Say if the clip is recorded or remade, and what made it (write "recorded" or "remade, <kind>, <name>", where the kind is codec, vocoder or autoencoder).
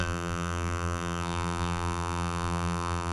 remade, vocoder, BigVGAN v2